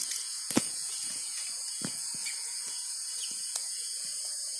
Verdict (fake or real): fake